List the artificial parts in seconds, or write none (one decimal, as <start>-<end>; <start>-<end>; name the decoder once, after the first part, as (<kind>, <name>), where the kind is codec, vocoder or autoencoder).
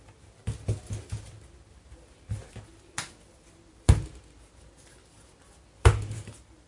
none